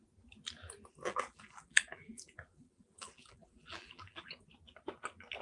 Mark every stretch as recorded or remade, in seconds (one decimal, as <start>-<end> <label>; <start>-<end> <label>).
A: 0.0-1.1 recorded; 1.1-4.3 remade; 4.3-5.4 recorded

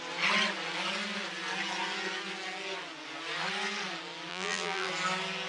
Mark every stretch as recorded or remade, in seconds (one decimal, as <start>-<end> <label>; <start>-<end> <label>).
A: 0.0-4.3 recorded; 4.3-4.9 remade; 4.9-5.5 recorded

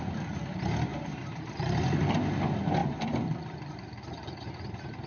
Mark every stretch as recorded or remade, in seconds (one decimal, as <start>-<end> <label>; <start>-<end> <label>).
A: 0.0-0.9 recorded; 0.9-1.8 remade; 1.8-2.8 recorded; 2.8-4.5 remade; 4.5-5.1 recorded

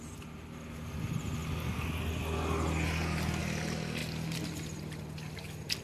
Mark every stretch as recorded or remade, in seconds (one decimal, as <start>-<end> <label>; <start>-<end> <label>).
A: 0.0-5.8 recorded

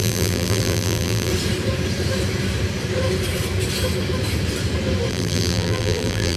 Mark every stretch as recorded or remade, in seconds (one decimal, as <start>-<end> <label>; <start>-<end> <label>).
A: 0.0-1.3 remade; 1.3-5.1 recorded; 5.1-6.4 remade

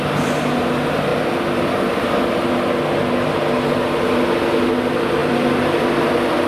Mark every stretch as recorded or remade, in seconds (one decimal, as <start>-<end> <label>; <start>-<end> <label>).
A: 0.0-5.2 recorded; 5.2-5.8 remade; 5.8-6.5 recorded

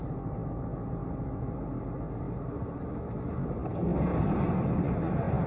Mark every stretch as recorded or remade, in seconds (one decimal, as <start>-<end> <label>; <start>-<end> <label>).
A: 0.0-5.5 recorded